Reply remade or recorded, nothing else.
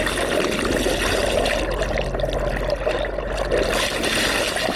recorded